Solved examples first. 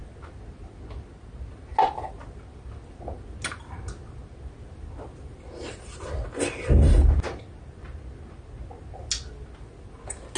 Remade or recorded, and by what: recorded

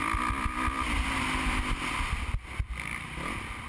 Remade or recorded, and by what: recorded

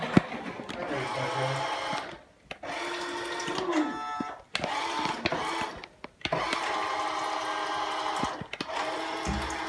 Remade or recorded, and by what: recorded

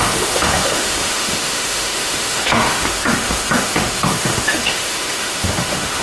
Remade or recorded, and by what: remade, autoencoder, DAC-VAE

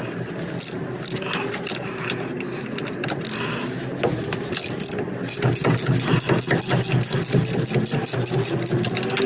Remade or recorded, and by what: recorded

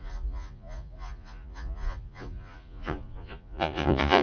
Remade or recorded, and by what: remade, vocoder, Vocos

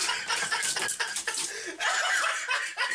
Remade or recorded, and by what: remade, vocoder, BigVGAN v2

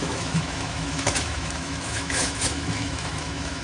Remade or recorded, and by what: remade, autoencoder, DAC-VAE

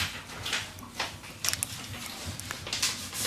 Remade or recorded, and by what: recorded